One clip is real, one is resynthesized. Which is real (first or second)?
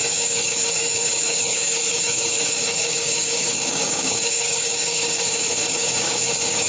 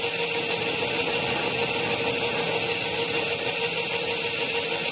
second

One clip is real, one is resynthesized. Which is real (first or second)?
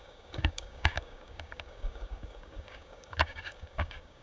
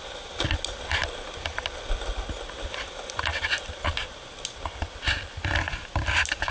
second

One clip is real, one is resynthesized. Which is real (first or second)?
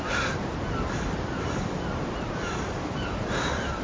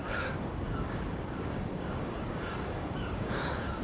first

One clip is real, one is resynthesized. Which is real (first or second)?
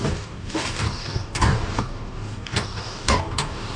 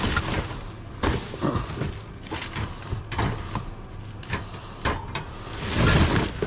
second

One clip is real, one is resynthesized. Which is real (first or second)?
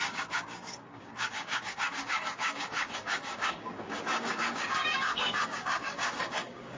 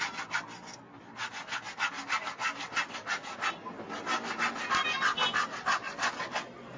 second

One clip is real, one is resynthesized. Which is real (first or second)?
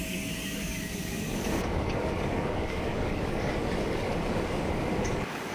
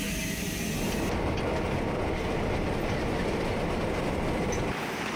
second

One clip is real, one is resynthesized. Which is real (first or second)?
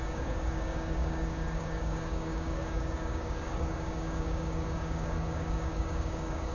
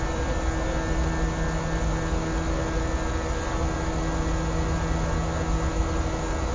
second